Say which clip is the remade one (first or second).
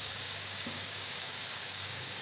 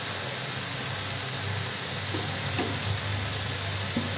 first